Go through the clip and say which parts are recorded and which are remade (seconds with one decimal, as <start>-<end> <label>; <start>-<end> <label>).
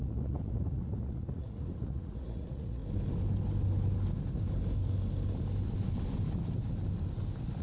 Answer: 0.0-2.8 remade; 2.8-7.6 recorded